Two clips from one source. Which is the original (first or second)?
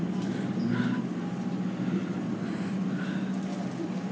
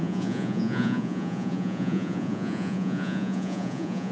first